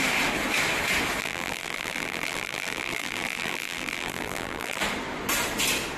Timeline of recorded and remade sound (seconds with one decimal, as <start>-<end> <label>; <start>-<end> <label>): 0.0-1.2 recorded; 1.2-4.8 remade; 4.8-6.0 recorded